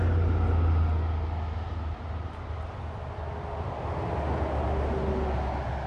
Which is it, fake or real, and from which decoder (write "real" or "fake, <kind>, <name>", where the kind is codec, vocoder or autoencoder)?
real